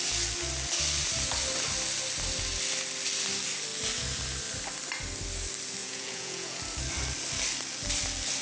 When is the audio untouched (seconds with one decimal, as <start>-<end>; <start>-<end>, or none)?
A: 0.0-5.8; 6.6-8.4